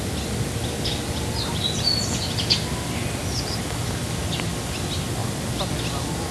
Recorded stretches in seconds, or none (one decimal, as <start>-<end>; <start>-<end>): 0.0-6.3